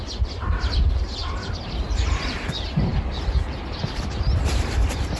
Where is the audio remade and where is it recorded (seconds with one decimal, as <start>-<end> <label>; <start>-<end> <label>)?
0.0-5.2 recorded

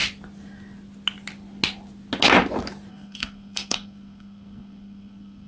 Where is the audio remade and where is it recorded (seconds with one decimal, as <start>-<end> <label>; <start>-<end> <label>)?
0.0-2.9 recorded; 2.9-5.5 remade

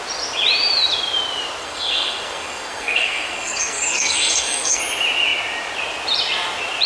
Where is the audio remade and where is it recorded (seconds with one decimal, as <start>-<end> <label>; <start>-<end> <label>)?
0.0-1.6 recorded; 1.6-4.8 remade; 4.8-6.9 recorded

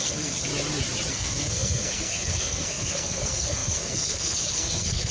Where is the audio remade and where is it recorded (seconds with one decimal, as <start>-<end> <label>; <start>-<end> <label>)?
0.0-0.5 remade; 0.5-1.1 recorded; 1.1-5.1 remade